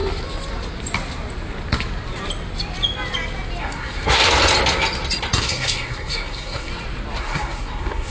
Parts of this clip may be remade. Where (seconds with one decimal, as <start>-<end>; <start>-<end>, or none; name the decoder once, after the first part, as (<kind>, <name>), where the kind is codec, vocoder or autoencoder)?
3.6-4.2 (codec, SNAC); 5.4-6.7; 7.2-8.1

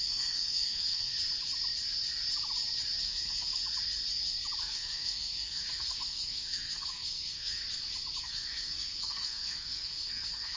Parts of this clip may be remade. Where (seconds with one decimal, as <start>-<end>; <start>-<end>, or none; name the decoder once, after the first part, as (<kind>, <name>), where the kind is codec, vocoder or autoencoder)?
0.0-1.1 (codec, SNAC); 3.0-3.6; 4.6-7.6; 8.2-10.6

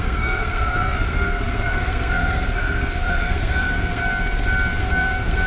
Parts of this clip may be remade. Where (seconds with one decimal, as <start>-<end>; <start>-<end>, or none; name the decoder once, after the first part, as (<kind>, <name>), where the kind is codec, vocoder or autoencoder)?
0.0-4.0 (codec, SNAC); 4.8-5.5